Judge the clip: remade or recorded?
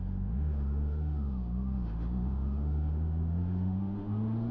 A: remade